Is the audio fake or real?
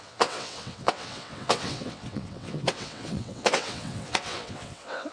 fake